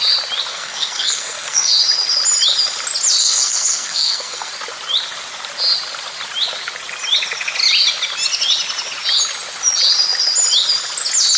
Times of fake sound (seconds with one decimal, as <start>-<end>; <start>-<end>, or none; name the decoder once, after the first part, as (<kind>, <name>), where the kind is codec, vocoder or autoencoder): 0.5-1.7 (codec, SNAC); 3.2-4.5